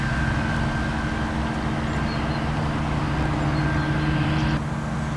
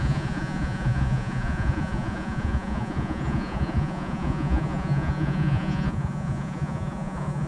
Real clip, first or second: first